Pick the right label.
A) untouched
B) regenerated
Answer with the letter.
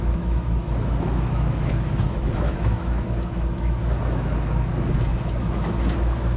B